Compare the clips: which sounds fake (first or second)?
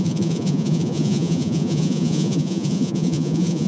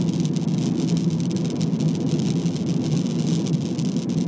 first